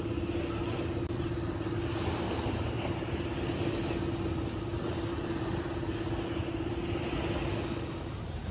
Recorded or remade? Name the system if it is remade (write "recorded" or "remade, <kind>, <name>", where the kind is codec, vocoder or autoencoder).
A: recorded